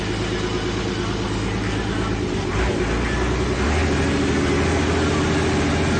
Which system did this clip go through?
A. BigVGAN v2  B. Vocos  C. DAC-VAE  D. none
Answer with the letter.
D